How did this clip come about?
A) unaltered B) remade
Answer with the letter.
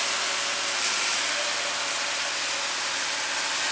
A